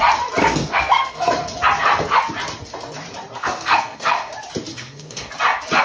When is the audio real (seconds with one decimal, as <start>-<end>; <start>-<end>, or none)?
0.0-0.4; 1.3-3.4; 4.3-4.7; 5.3-5.8